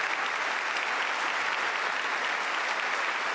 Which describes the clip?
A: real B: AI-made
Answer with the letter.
A